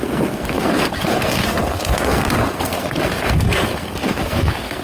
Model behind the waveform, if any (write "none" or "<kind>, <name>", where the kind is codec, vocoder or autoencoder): codec, SNAC